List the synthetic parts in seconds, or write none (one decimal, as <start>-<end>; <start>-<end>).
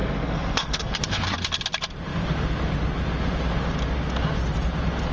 0.0-1.0